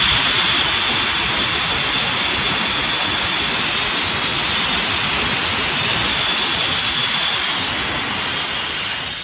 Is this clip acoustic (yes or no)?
yes